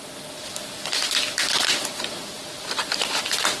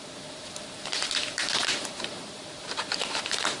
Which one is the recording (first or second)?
first